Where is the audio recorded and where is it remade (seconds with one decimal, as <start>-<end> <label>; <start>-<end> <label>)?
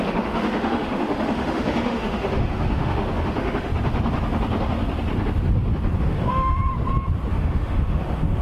0.0-3.7 remade; 3.7-6.0 recorded; 6.0-6.7 remade; 6.7-7.3 recorded; 7.3-8.4 remade